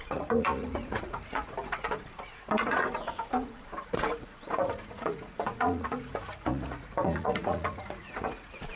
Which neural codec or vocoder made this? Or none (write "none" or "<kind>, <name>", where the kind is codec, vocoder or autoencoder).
vocoder, Vocos